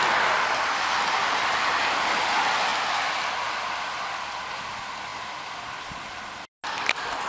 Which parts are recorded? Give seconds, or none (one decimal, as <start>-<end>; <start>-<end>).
0.0-1.2; 1.8-5.1; 6.6-7.3